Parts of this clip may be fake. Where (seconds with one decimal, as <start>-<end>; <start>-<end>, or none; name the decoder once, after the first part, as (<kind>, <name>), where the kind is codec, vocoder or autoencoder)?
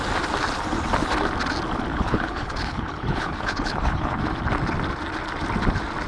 1.9-4.2 (codec, HILCodec)